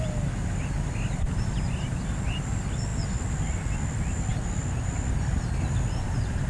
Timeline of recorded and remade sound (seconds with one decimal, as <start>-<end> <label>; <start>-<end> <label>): 0.0-6.5 recorded